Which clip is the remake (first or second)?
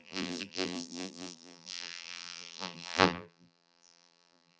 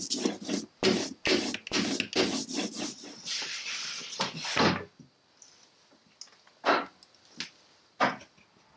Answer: first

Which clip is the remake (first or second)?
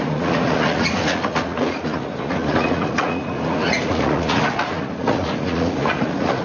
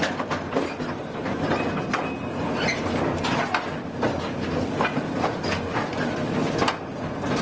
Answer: first